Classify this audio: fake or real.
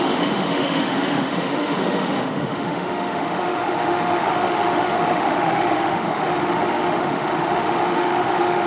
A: fake